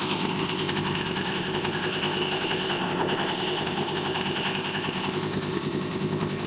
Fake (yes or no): yes